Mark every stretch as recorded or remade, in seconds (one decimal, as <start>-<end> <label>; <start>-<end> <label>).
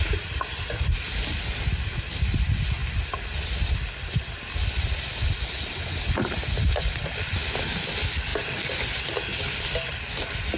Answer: 0.0-10.6 recorded